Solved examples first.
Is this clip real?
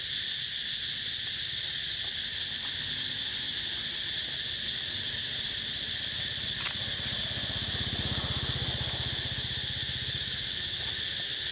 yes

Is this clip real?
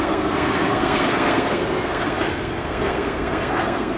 no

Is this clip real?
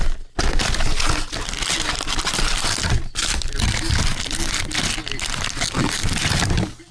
yes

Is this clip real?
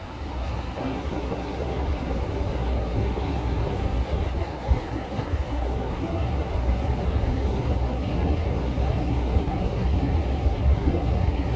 no